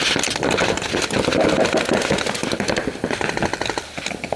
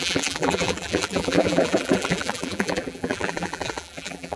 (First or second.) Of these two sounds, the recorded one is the first